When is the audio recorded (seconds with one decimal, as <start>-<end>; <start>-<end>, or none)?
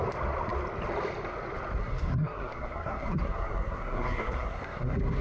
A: 0.0-1.8